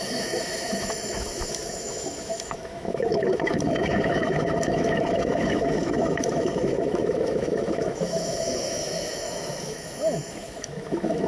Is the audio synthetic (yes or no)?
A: yes